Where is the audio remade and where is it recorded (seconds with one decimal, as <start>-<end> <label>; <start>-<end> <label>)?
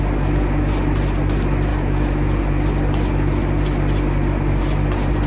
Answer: 0.0-5.3 recorded